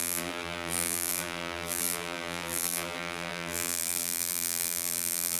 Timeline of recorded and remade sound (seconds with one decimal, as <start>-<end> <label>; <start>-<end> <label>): 0.0-5.4 remade